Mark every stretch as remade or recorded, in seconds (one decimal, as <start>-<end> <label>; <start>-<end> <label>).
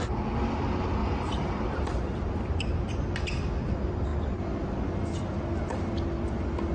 0.0-1.0 recorded; 1.0-3.0 remade; 3.0-6.7 recorded